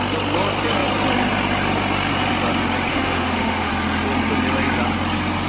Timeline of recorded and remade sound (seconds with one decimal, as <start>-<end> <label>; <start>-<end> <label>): 0.0-2.9 recorded; 2.9-3.7 remade; 3.7-5.5 recorded